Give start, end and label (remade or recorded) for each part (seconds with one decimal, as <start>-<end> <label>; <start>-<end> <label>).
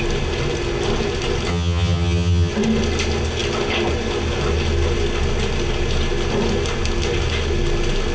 0.0-1.5 recorded; 1.5-2.5 remade; 2.5-8.1 recorded